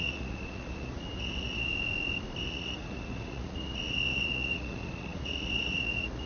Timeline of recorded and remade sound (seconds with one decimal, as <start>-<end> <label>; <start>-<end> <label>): 0.0-1.7 remade; 1.7-2.4 recorded; 2.4-6.3 remade